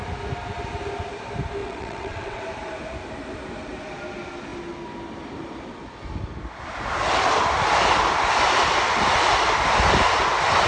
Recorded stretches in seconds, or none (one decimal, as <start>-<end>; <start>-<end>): 0.0-1.6; 2.4-10.7